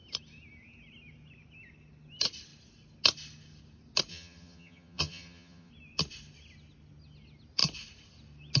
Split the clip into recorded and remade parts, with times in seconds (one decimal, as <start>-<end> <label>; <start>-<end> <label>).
0.0-4.1 recorded; 4.1-5.7 remade; 5.7-8.6 recorded